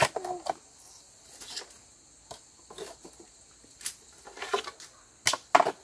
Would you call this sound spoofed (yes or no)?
no